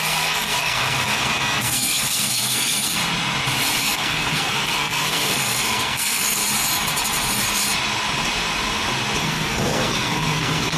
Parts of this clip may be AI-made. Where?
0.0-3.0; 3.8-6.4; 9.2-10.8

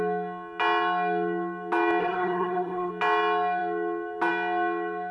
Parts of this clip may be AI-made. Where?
2.0-2.9

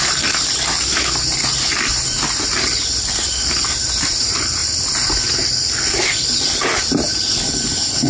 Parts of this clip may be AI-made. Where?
none

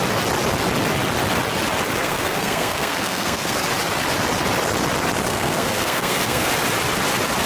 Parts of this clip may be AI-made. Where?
2.0-3.6; 5.3-6.5

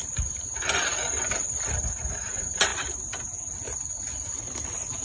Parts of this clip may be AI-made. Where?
none

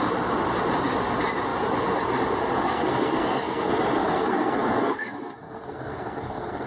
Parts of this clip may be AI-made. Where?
2.6-6.7

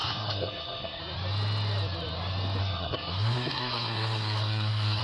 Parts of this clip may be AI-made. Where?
0.0-1.0; 2.6-5.0

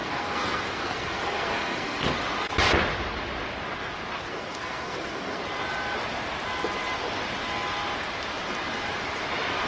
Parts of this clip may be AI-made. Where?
0.0-2.0; 4.3-5.4